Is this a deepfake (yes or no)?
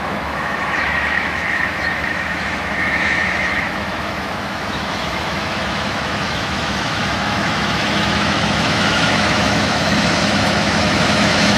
yes